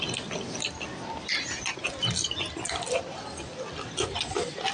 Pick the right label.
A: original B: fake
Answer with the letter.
A